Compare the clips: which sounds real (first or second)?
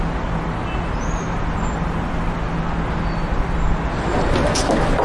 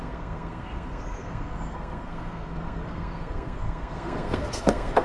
first